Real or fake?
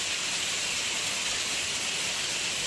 real